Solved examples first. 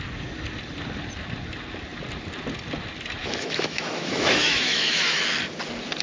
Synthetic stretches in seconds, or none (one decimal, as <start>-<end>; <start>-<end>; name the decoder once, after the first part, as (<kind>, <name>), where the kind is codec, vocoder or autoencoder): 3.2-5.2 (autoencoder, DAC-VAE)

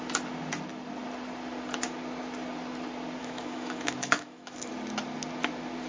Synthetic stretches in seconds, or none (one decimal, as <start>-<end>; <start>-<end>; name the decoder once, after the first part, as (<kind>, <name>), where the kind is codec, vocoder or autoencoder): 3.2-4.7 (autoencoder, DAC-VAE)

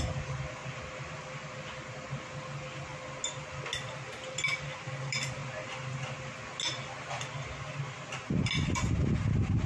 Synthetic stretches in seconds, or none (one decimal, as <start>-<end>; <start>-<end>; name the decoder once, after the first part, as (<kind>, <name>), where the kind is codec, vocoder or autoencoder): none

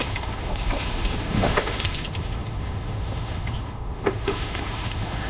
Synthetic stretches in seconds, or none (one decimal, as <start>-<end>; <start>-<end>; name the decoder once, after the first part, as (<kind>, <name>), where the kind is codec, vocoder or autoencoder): 0.0-5.3 (autoencoder, DAC-VAE)

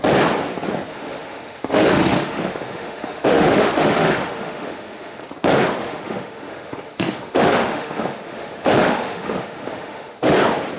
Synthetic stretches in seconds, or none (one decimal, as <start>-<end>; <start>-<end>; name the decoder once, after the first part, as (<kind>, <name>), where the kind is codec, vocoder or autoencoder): 0.9-5.2 (autoencoder, DAC-VAE); 5.8-10.3

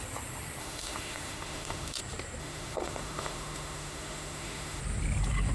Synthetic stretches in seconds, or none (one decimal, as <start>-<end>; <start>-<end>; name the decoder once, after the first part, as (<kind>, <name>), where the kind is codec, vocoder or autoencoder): 0.6-2.0 (autoencoder, DAC-VAE); 2.4-4.8

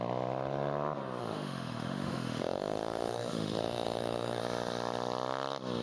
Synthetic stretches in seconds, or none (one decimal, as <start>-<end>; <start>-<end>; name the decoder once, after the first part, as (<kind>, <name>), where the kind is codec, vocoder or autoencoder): 1.2-4.4 (autoencoder, DAC-VAE)

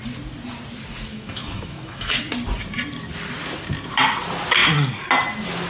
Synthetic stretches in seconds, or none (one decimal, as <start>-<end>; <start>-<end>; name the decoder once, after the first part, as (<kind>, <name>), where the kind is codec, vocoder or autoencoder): 1.1-2.2 (autoencoder, DAC-VAE)